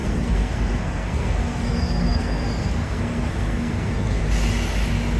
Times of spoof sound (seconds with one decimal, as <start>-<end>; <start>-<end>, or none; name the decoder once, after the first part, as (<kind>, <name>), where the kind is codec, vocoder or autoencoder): 0.0-4.2 (codec, SNAC)

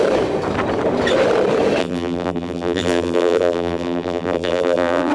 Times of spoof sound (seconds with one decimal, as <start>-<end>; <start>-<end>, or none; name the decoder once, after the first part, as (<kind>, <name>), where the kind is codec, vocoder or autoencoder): 1.8-5.1 (vocoder, BigVGAN v2)

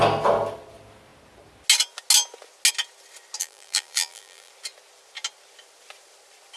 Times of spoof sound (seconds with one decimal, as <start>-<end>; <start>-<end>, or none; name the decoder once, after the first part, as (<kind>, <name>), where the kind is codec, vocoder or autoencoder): 3.4-4.5 (vocoder, BigVGAN v2)

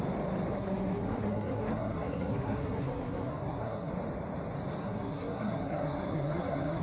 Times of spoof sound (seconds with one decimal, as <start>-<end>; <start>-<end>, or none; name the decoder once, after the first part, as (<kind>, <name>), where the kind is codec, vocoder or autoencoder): 0.5-3.9 (codec, SNAC); 4.8-6.8

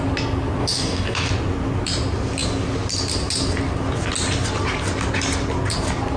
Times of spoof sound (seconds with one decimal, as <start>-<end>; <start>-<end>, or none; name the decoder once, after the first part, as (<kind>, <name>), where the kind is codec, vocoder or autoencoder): 0.6-1.3 (codec, DAC)